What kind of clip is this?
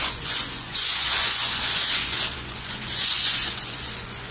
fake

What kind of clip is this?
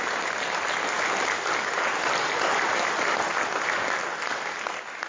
real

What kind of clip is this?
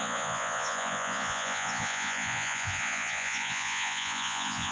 fake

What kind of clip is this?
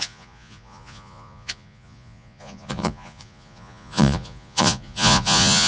fake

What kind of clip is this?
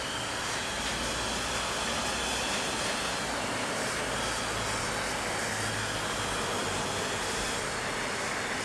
real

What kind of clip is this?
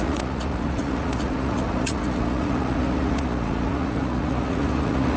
fake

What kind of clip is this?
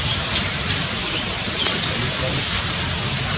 real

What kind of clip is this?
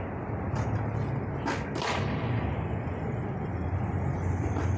real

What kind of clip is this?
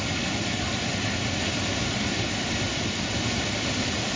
real